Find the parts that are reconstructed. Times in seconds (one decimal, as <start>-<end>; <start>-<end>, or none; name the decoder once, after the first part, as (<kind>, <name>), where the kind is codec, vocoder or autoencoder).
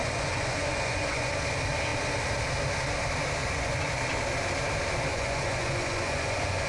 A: 0.0-1.3 (vocoder, Vocos); 3.4-4.0; 5.1-6.7